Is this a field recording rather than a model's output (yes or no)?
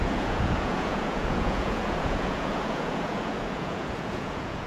no